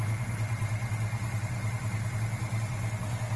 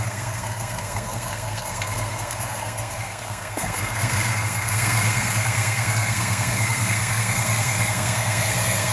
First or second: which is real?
first